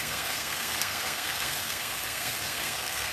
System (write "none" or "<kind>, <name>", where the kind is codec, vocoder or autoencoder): codec, SNAC